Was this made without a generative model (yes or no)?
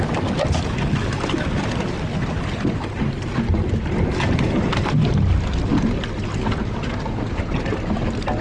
yes